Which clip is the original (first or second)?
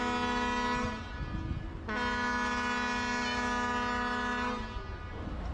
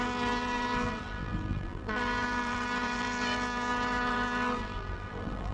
first